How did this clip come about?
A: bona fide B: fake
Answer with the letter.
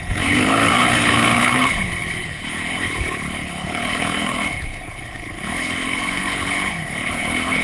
B